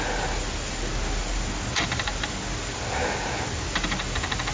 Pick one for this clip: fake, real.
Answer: real